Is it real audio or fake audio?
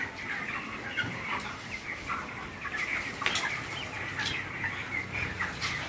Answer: real